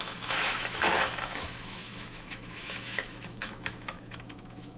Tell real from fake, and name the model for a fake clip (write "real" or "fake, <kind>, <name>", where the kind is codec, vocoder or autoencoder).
fake, autoencoder, DAC-VAE